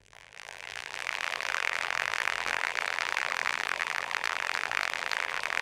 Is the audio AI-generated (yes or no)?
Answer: yes